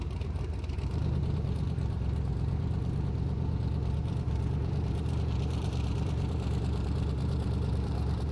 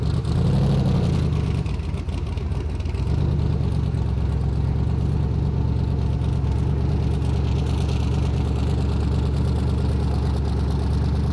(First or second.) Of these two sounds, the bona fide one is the second